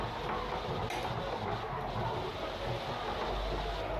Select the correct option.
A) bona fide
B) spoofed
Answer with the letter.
A